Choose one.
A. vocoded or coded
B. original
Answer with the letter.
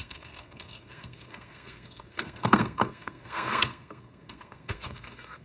A